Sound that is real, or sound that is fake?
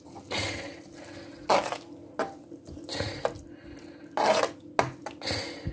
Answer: real